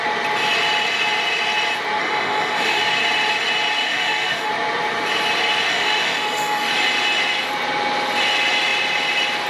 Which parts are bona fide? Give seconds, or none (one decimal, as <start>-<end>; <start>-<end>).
0.0-2.0; 2.8-3.8; 4.5-5.7; 6.7-9.5